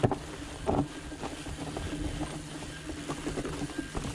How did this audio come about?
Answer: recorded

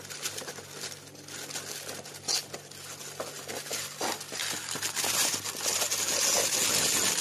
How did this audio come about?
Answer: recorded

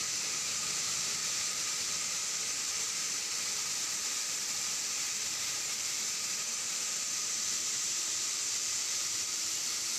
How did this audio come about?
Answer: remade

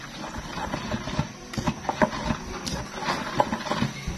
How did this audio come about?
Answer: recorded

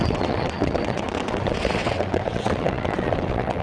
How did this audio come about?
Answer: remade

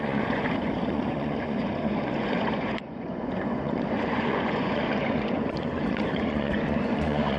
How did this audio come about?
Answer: remade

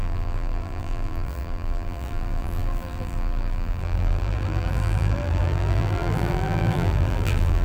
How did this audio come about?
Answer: remade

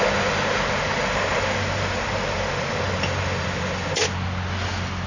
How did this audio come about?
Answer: recorded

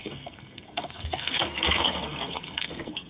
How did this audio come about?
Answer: remade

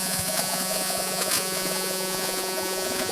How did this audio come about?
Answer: remade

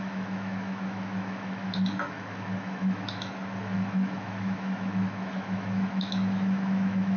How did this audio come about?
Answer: remade